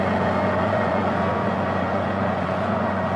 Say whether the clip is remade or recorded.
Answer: remade